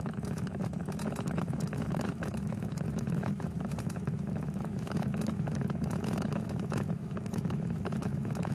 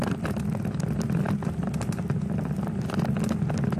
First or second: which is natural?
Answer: second